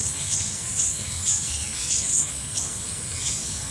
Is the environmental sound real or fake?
fake